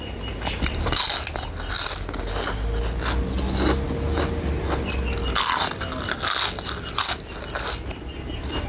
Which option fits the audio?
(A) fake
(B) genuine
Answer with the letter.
B